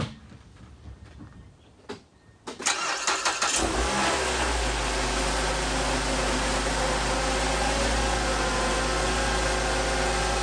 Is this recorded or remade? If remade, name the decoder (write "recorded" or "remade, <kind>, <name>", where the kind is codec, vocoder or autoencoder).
recorded